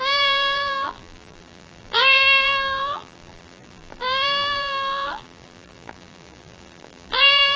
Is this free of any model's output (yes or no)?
no